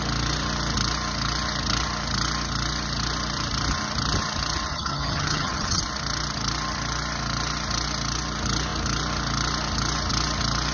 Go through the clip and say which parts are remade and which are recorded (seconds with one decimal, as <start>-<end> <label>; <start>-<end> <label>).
0.0-4.7 recorded; 4.7-5.8 remade; 5.8-10.7 recorded